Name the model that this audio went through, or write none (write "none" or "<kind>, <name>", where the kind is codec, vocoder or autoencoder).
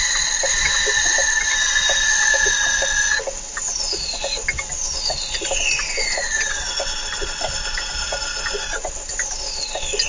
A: none